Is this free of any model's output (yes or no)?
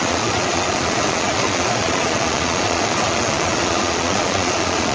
no